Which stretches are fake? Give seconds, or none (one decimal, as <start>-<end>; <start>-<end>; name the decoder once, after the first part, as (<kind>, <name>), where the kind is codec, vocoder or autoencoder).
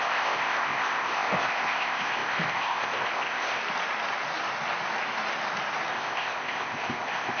0.0-3.6 (codec, ZipCodec); 5.9-7.4